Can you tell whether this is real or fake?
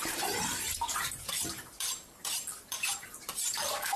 fake